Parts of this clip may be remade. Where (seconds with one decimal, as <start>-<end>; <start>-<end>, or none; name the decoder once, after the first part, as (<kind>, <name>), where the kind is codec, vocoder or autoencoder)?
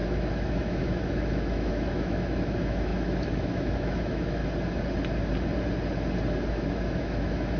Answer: 0.0-4.4 (autoencoder, DAC-VAE); 6.5-7.6